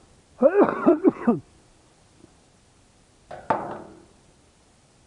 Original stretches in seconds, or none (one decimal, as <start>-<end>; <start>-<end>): 0.0-0.9; 1.5-5.1